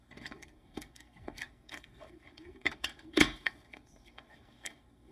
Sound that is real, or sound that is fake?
fake